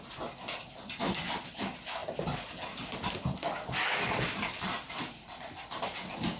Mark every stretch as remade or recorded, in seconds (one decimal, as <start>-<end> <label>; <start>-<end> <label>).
0.0-6.4 recorded